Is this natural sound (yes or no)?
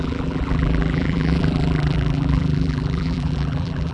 no